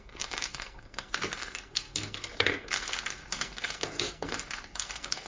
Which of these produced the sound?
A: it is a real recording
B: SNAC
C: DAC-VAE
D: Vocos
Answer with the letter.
B